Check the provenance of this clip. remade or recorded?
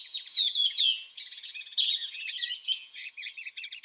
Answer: remade